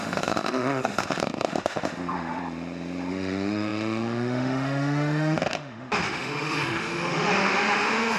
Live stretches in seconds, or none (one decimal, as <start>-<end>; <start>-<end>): 2.4-3.1

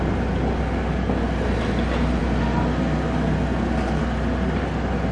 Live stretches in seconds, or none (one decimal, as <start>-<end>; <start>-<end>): 0.0-5.1

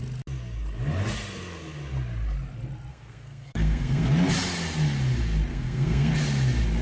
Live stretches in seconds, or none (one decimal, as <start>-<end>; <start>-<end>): 0.0-2.9; 4.1-5.5; 6.1-6.8

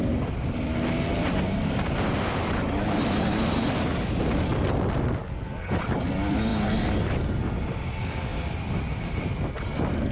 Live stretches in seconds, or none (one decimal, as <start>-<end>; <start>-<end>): 0.0-8.3; 9.1-10.1

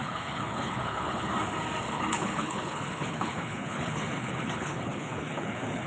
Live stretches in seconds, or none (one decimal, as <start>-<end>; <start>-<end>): 1.3-1.8